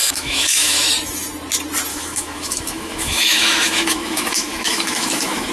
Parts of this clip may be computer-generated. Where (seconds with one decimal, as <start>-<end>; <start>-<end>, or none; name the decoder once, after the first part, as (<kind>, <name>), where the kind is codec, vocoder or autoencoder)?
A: 0.0-0.9 (autoencoder, DAC-VAE); 1.9-5.5

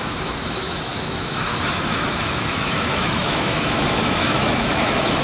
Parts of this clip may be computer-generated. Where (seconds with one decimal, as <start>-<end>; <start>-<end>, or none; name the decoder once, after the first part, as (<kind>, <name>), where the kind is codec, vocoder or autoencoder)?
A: 0.0-5.2 (autoencoder, DAC-VAE)

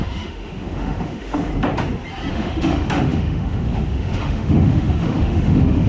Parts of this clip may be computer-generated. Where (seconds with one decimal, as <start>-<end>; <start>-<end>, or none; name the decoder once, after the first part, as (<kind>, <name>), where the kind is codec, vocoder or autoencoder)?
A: 0.0-1.5 (autoencoder, DAC-VAE); 2.3-5.9

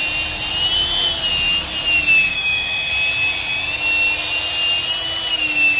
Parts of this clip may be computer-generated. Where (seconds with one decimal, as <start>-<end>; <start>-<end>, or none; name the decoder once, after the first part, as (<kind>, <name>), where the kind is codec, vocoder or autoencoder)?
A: 2.3-2.9 (autoencoder, DAC-VAE)

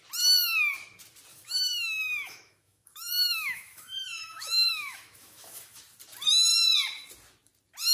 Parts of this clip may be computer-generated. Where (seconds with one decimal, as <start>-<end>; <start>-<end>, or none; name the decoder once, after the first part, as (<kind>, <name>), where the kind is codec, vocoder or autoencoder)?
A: 1.3-5.8 (autoencoder, DAC-VAE)

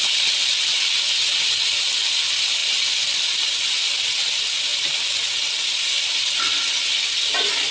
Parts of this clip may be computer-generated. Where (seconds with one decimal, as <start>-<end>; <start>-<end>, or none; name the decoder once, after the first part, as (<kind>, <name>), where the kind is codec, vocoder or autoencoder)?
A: none

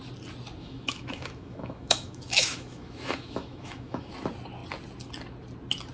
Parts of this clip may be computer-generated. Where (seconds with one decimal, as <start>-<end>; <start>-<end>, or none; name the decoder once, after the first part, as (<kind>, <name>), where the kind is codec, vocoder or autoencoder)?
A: 0.6-4.1 (autoencoder, DAC-VAE)